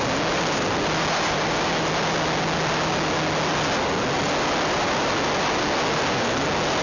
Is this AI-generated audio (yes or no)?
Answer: no